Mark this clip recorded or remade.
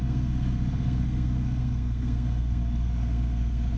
remade